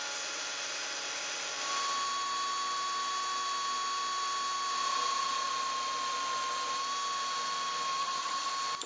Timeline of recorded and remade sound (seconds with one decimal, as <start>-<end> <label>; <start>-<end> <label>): 0.0-8.0 recorded; 8.0-8.5 remade; 8.5-8.9 recorded